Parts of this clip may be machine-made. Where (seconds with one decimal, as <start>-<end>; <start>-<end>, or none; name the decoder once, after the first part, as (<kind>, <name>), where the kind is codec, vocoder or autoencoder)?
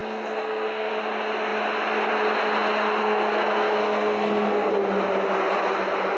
0.0-0.9 (codec, SNAC); 3.0-4.7